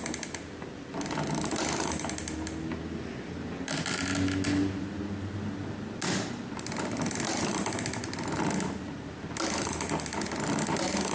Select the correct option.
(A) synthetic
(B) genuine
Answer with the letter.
B